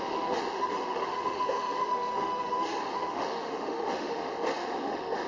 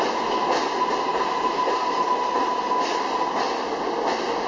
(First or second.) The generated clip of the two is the first